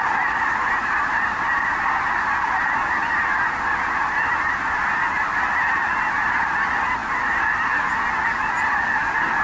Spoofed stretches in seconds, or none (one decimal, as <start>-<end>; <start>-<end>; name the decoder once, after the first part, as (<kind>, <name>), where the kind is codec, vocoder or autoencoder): none